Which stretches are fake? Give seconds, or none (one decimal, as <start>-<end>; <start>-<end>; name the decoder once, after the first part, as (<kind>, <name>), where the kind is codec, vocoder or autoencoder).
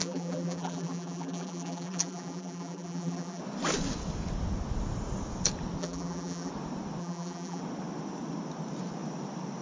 0.0-3.4 (vocoder, BigVGAN v2); 5.8-6.5; 7.0-7.6